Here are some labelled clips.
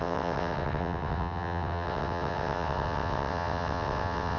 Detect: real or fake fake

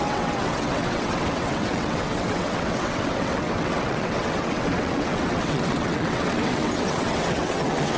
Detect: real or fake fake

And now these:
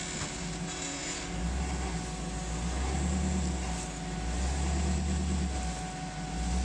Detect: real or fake real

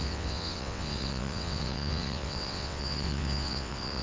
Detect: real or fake fake